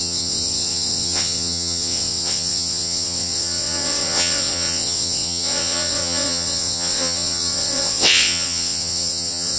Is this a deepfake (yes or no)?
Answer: yes